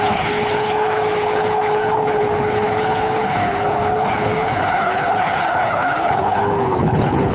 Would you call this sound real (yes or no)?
no